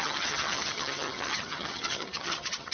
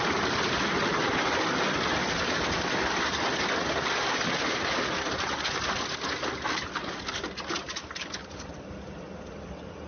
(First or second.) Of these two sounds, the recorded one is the second